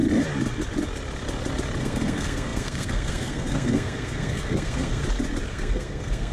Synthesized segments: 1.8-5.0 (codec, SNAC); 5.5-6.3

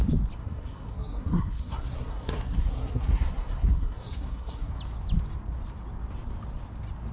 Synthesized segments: 0.4-4.7 (codec, SNAC)

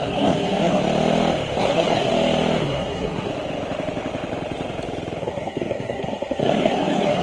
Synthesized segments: 0.0-0.8 (codec, SNAC); 1.6-2.1; 2.6-3.3; 5.2-7.2

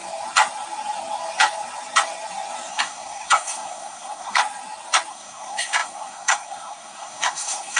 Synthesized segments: 2.7-4.4 (codec, SNAC); 5.1-7.8